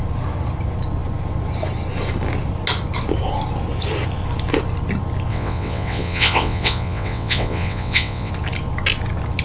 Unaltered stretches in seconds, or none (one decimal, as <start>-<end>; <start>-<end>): 0.0-5.3; 8.3-9.4